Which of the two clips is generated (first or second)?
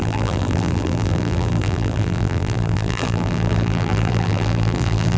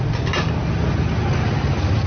first